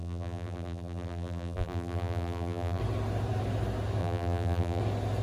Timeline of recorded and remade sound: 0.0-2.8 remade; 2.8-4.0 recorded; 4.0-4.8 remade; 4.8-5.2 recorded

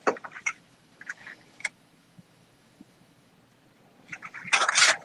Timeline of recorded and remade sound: 0.0-0.4 recorded; 0.4-3.3 remade; 3.3-5.0 recorded

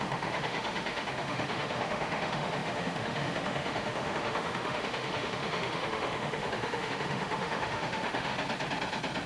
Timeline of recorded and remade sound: 0.0-8.3 remade; 8.3-9.3 recorded